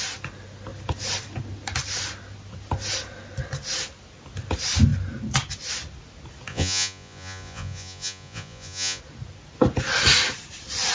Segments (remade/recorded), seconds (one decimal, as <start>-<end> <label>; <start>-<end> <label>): 0.0-6.5 recorded; 6.5-9.0 remade; 9.0-10.9 recorded